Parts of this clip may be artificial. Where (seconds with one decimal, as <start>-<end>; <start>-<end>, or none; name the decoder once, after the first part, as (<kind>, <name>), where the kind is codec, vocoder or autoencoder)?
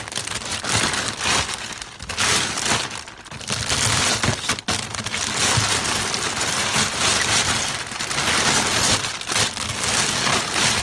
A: none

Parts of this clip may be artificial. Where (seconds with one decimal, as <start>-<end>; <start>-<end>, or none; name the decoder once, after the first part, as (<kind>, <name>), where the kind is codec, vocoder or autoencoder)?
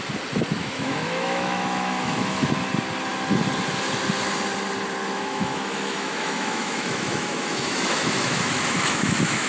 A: 0.6-2.5 (autoencoder, DAC-VAE); 5.0-9.5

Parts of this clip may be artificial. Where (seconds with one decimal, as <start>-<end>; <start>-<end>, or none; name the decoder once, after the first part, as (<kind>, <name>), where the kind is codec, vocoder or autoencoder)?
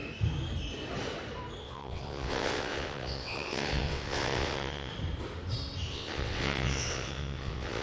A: 1.6-4.9 (vocoder, WaveNeXt); 5.9-7.8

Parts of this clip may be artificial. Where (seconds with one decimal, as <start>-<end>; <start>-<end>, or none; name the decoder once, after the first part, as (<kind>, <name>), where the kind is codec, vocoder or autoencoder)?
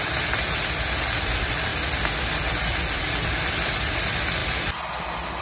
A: none